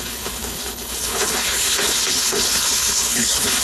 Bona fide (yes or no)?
no